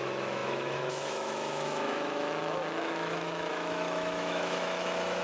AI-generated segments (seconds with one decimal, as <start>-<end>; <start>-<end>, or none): 0.0-5.2